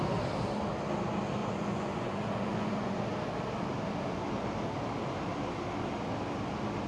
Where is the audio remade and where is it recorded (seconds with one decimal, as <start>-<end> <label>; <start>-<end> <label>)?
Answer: 0.0-1.4 recorded; 1.4-3.0 remade; 3.0-6.9 recorded